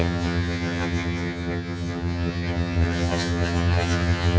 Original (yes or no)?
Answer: no